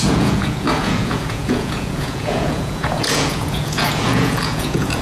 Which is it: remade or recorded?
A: remade